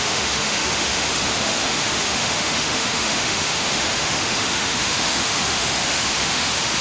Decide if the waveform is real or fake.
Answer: fake